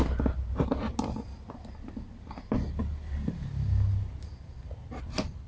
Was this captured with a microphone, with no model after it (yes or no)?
yes